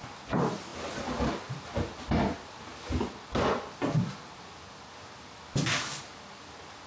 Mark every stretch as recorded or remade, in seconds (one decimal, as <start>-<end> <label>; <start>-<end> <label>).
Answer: 0.0-6.9 recorded